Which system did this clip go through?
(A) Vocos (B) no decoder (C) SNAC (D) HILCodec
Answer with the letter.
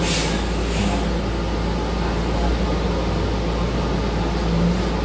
B